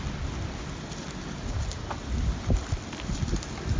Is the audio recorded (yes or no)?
yes